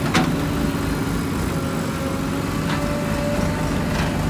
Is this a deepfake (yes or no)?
no